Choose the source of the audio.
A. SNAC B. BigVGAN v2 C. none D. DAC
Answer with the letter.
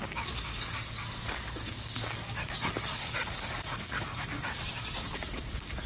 D